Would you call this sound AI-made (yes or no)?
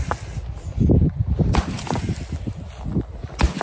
no